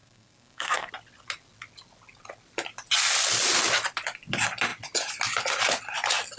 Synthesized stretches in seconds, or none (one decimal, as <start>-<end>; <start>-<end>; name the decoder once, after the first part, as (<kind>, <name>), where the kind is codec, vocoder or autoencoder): 0.0-0.9 (codec, SNAC)